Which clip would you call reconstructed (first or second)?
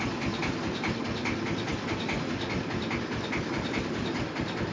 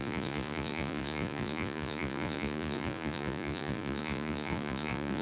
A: second